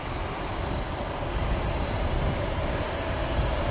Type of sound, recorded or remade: recorded